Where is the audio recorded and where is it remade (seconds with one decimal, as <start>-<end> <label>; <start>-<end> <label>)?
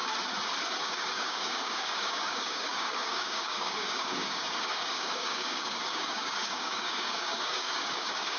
0.0-0.8 recorded; 0.8-8.4 remade